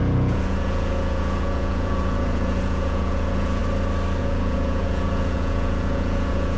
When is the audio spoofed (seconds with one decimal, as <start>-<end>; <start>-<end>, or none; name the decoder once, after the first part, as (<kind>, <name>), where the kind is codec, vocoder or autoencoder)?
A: 0.0-3.6 (vocoder, Vocos); 4.2-6.6